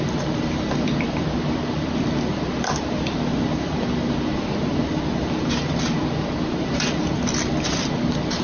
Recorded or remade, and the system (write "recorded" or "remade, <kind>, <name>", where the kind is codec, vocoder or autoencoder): recorded